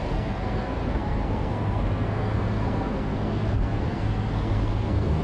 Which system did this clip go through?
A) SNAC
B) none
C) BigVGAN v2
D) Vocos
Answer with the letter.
A